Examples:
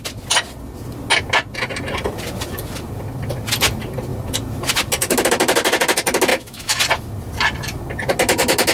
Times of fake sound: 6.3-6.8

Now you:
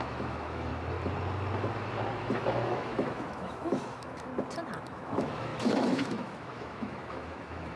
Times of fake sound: 0.0-0.7; 2.2-4.3; 4.8-7.8

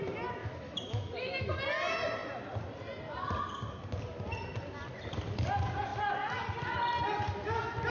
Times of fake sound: 0.4-1.6

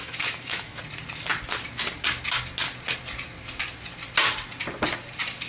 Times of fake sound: 0.0-0.8

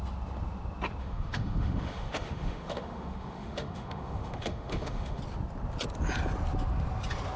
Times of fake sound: 1.0-5.2